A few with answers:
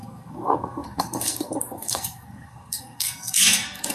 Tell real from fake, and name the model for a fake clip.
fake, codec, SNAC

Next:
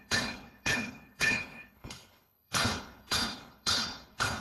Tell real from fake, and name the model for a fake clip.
fake, codec, HILCodec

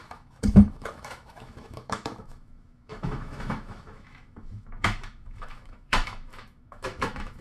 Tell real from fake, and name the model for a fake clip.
fake, autoencoder, DAC-VAE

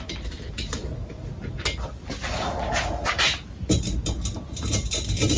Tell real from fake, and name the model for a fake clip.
real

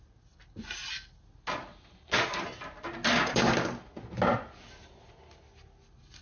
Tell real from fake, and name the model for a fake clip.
real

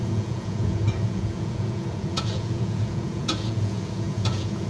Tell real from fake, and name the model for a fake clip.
fake, vocoder, Vocos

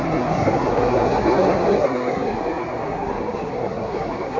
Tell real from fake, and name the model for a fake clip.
fake, codec, SNAC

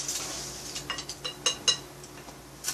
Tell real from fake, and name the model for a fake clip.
real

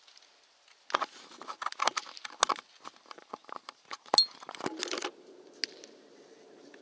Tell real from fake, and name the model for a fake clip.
real